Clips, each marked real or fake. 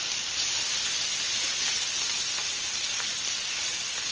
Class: real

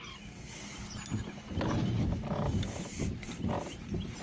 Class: real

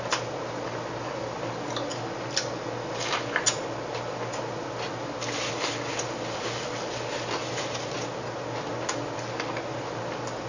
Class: real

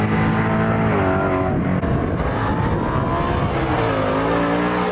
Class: real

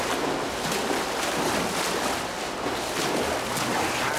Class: real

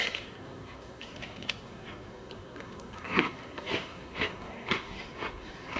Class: fake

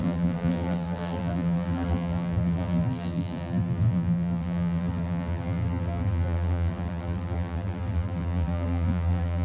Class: fake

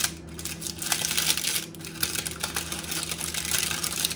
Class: real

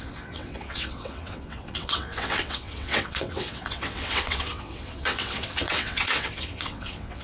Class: fake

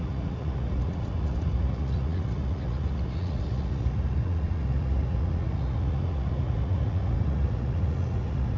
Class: fake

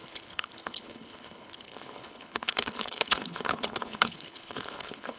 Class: fake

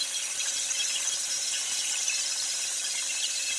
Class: real